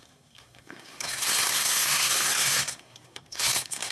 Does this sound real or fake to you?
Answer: fake